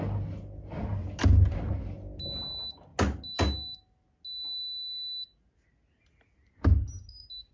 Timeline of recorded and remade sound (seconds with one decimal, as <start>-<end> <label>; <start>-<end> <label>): 0.0-7.5 recorded